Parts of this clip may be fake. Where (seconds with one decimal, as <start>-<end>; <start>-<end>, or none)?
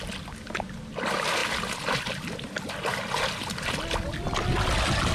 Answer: none